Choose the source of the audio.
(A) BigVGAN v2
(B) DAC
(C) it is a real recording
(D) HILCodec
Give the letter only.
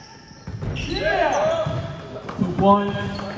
C